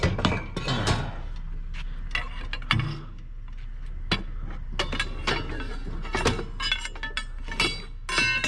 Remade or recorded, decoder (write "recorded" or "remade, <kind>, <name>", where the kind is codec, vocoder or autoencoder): recorded